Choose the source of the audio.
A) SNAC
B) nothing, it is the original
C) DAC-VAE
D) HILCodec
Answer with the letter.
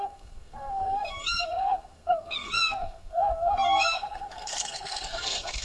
A